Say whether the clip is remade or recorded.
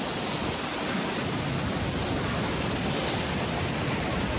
recorded